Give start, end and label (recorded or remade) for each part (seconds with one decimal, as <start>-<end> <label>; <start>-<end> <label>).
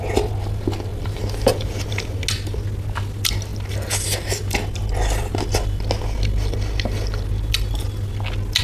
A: 0.0-0.9 recorded; 0.9-1.9 remade; 1.9-8.6 recorded